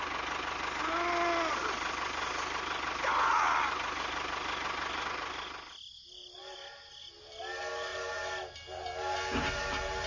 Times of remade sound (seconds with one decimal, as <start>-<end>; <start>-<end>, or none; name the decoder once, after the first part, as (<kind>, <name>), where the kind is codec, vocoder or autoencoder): none